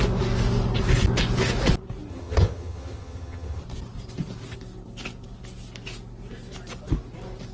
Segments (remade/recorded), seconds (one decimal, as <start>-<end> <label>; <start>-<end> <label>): 0.0-2.1 recorded; 2.1-3.6 remade; 3.6-7.5 recorded

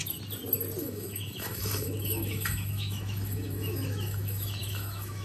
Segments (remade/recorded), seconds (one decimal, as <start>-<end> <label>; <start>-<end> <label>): 0.0-0.8 recorded; 0.8-5.2 remade

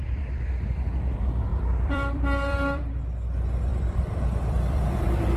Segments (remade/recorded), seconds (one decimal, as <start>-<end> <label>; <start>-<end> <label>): 0.0-1.5 recorded; 1.5-3.0 remade; 3.0-3.7 recorded; 3.7-5.4 remade